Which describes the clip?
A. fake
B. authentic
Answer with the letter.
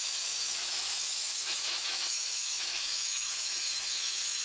A